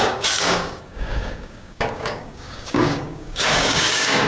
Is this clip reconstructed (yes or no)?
yes